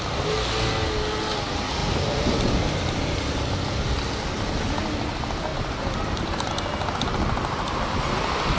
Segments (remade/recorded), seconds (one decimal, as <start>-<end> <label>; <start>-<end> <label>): 0.0-5.5 recorded; 5.5-6.5 remade; 6.5-8.6 recorded